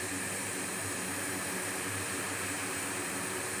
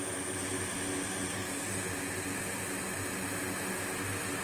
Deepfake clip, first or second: first